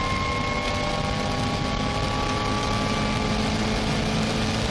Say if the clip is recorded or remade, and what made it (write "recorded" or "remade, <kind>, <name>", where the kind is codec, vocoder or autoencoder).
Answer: recorded